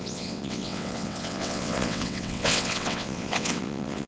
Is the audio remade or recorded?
remade